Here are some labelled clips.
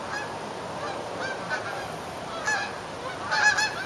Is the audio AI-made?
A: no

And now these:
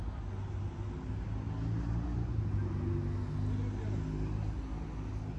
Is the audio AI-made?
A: no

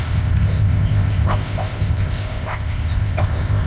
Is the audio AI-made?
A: yes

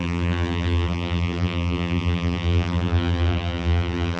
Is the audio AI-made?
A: yes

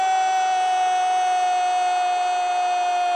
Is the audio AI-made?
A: no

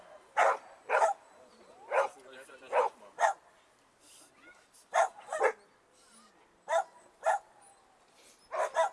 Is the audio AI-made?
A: no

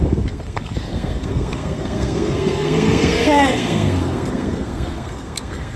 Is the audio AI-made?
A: yes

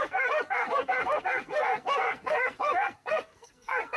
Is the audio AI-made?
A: yes